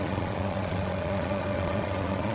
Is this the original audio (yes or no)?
no